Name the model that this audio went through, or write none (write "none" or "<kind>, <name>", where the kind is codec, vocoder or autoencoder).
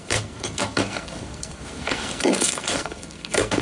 codec, SNAC